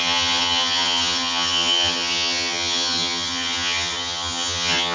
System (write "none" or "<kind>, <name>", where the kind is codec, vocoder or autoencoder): vocoder, HiFi-GAN